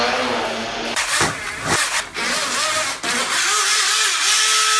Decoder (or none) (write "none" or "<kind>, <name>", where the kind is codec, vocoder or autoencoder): none